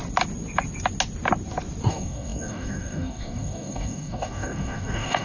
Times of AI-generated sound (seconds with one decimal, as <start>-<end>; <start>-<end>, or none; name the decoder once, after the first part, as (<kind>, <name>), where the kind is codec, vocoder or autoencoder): 1.9-5.2 (codec, DAC)